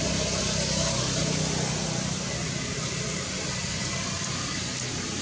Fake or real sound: real